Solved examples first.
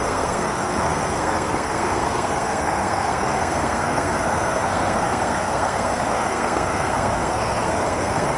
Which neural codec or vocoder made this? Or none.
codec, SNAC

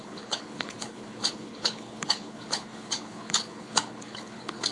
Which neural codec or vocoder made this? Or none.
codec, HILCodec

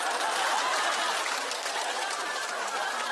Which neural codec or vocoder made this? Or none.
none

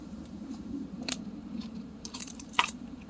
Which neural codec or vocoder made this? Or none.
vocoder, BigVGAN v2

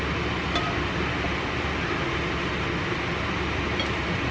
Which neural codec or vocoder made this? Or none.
none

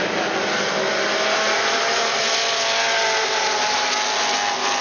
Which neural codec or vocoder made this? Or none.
none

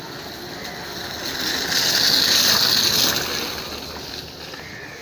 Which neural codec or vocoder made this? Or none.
none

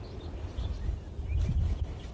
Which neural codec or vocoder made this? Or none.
none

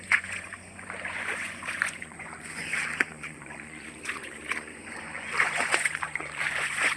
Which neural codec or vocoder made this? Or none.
vocoder, Vocos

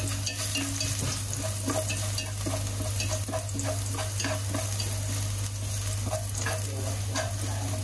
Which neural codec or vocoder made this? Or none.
none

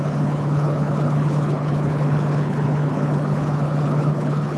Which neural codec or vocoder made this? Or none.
codec, HILCodec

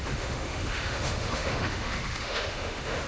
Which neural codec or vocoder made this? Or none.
autoencoder, DAC-VAE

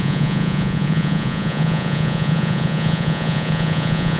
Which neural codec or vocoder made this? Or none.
vocoder, Vocos